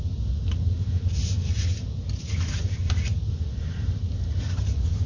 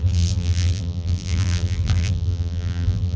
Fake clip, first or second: second